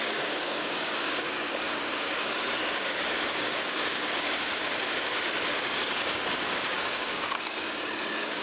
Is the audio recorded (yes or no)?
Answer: no